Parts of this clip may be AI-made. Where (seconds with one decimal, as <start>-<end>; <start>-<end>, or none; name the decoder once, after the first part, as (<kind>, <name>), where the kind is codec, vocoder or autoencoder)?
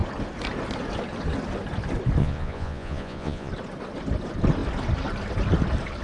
2.2-3.5 (vocoder, Vocos)